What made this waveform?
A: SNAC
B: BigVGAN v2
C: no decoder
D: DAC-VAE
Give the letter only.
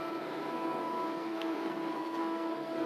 A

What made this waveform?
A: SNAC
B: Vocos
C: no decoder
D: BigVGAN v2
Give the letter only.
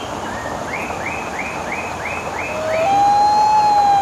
C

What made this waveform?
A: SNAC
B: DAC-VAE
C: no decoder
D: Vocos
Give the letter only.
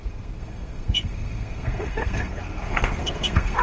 A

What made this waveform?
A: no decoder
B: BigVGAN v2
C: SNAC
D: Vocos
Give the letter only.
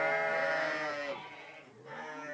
A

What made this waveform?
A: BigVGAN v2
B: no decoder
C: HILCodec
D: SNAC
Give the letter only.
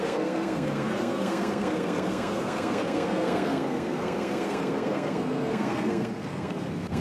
D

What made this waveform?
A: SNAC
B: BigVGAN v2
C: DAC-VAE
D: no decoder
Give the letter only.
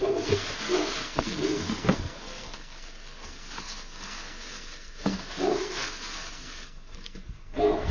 A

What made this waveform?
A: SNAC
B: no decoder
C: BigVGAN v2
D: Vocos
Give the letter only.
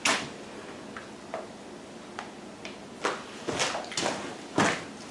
B